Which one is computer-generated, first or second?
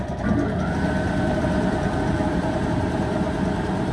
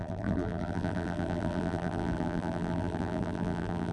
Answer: second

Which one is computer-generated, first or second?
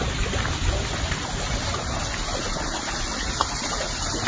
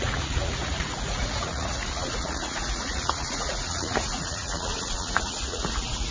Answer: second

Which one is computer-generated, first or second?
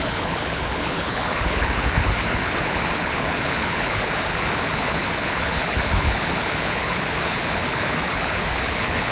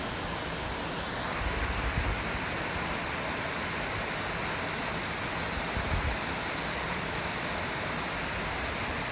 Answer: first